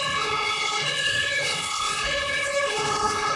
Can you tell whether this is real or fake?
fake